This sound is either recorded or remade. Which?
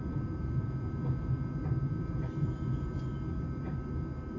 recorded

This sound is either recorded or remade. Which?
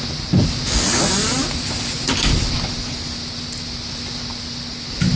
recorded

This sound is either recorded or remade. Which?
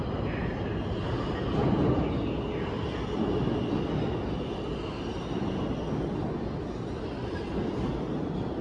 recorded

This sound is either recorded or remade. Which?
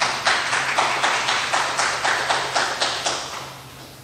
recorded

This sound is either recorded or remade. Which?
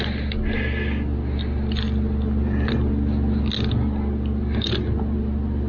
recorded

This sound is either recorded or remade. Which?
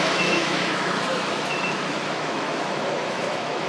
remade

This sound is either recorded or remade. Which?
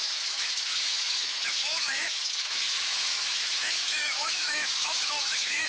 remade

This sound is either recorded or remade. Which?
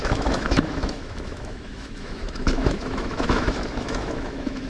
remade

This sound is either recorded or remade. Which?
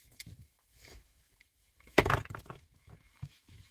remade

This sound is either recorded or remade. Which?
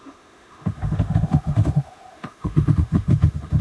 remade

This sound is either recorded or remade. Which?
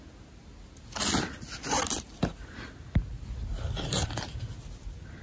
recorded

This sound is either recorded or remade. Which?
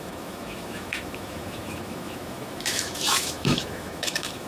remade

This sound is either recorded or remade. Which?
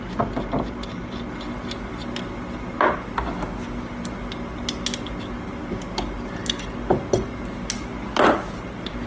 recorded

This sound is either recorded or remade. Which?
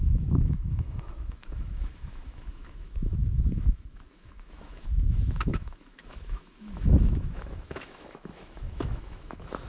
remade